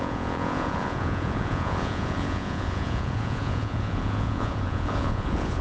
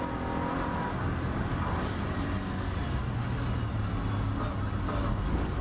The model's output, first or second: first